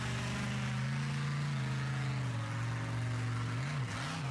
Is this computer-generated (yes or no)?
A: no